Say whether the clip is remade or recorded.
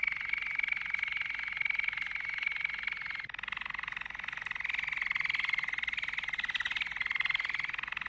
recorded